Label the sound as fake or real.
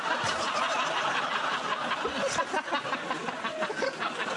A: real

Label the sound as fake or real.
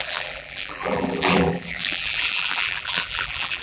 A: fake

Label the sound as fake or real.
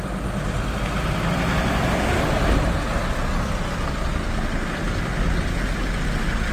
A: real